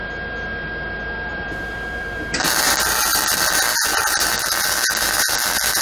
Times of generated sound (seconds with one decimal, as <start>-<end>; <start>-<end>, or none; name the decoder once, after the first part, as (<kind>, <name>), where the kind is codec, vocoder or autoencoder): 1.3-3.5 (vocoder, BigVGAN v2)

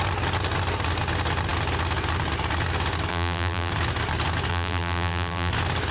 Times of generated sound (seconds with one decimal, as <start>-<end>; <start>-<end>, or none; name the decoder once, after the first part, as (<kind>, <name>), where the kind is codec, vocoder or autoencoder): 3.1-3.7 (vocoder, BigVGAN v2); 4.5-5.5

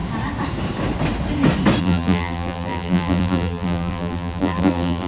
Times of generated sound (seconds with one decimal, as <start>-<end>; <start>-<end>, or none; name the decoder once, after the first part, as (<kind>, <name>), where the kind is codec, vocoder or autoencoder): 1.8-5.1 (vocoder, BigVGAN v2)

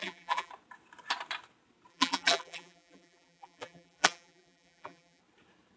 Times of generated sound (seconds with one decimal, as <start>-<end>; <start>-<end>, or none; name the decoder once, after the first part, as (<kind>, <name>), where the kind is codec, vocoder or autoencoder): 0.0-0.5 (vocoder, BigVGAN v2); 1.9-5.2